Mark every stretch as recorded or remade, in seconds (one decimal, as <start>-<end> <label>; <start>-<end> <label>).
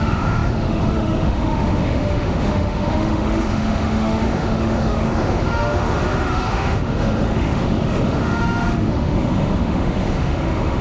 0.0-10.8 remade